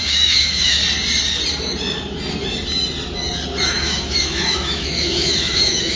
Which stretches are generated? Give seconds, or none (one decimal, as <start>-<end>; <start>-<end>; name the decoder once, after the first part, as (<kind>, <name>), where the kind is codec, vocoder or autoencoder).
0.0-0.8 (autoencoder, DAC-VAE); 3.6-6.0